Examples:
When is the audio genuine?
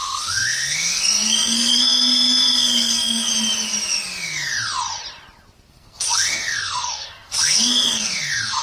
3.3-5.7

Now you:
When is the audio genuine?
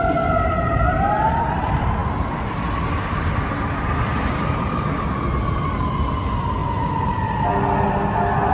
0.0-8.5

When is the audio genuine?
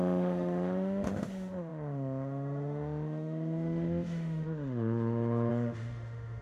none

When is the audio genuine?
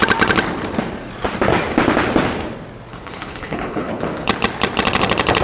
0.0-2.9; 4.0-5.4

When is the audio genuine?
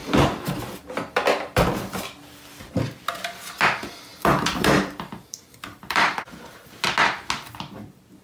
2.6-4.1; 6.2-8.2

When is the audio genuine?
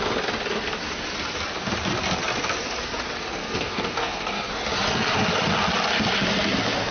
0.0-3.4; 4.5-6.9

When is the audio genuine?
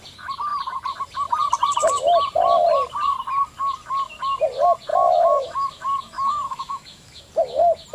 0.0-4.9; 7.2-7.9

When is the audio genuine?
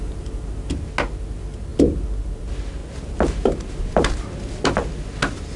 0.0-5.6